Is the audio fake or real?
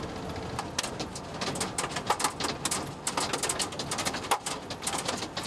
real